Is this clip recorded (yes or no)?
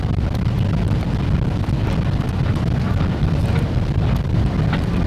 yes